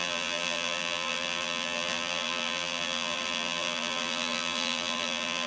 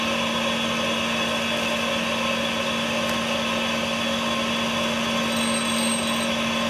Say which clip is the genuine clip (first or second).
second